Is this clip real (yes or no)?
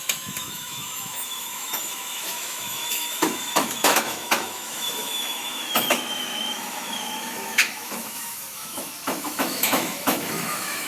no